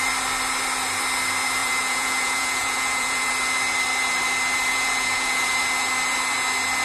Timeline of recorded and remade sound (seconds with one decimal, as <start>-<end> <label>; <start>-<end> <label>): 0.0-1.6 recorded; 1.6-3.3 remade; 3.3-4.7 recorded; 4.7-5.6 remade; 5.6-6.8 recorded